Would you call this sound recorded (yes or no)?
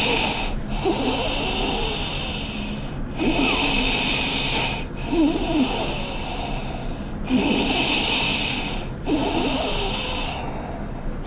yes